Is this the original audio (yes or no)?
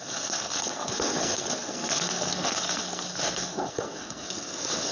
no